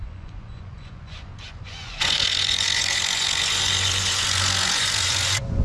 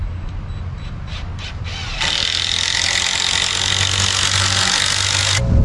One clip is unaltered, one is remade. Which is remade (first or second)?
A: first